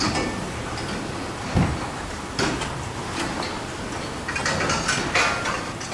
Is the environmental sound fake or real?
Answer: real